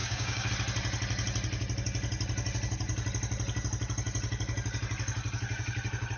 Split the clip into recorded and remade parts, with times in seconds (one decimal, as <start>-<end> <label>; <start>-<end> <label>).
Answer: 0.0-0.5 remade; 0.5-6.2 recorded